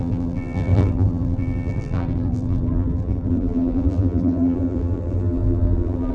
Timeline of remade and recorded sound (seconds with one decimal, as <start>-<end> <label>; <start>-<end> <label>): 0.0-6.1 remade